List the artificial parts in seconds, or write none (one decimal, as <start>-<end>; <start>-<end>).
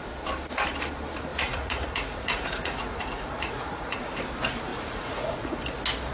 1.3-4.2; 4.7-5.6